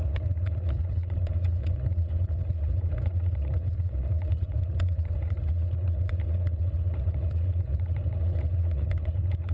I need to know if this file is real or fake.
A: fake